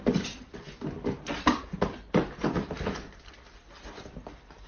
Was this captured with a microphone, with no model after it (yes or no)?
yes